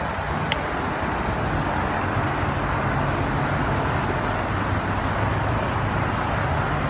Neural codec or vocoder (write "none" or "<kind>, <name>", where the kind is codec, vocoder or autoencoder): none